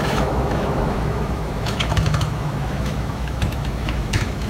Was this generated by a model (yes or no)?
yes